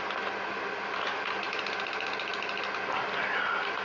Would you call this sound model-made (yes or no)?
no